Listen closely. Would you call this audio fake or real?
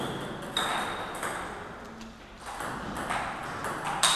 real